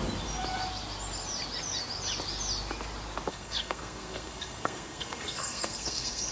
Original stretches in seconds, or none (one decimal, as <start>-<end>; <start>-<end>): 0.0-3.3